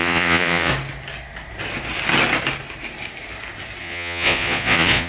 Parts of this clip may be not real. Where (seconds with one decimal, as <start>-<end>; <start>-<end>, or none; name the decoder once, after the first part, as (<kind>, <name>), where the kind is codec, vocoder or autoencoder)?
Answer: 0.0-0.7 (vocoder, Vocos); 3.8-5.1